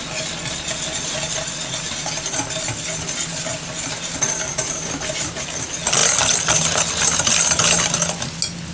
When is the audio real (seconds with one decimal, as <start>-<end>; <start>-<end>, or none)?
0.0-8.7